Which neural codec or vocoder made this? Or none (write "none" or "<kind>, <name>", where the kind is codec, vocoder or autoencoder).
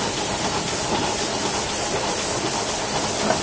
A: none